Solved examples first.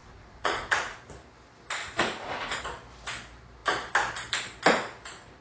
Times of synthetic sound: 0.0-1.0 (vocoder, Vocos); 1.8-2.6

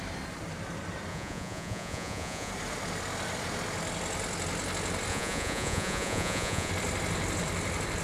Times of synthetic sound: 1.1-2.5 (vocoder, Vocos); 5.1-6.7

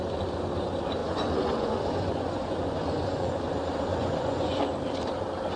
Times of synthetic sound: 1.0-3.4 (vocoder, Vocos); 3.9-4.6

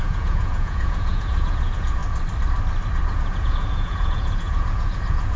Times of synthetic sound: 0.0-2.0 (vocoder, Vocos); 3.1-5.4

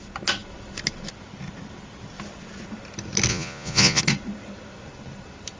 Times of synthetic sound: 3.3-4.0 (vocoder, Vocos)

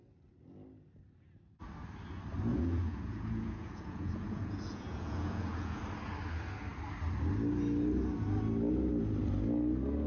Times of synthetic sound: 2.5-5.8 (vocoder, Vocos)